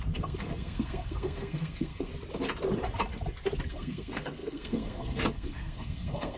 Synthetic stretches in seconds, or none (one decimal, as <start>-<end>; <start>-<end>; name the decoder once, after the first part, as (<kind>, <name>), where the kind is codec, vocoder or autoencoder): 0.0-2.1 (codec, SNAC); 3.7-6.4